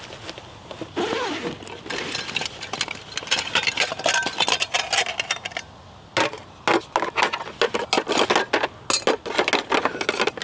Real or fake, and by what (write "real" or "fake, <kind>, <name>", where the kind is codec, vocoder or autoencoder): real